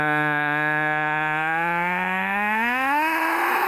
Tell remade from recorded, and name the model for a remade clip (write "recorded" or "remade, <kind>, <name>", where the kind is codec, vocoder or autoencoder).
remade, autoencoder, DAC-VAE